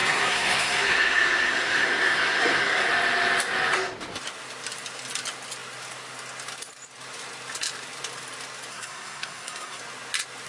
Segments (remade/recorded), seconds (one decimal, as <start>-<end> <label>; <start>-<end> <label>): 0.0-2.9 remade; 2.9-8.7 recorded; 8.7-9.8 remade; 9.8-10.5 recorded